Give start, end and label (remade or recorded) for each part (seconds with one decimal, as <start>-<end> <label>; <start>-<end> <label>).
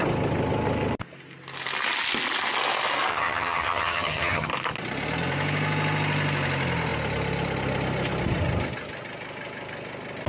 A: 0.0-3.1 recorded; 3.1-4.5 remade; 4.5-10.3 recorded